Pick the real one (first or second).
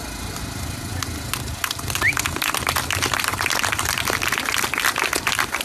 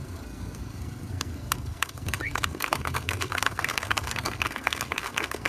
first